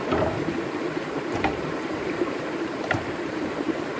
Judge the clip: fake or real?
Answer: fake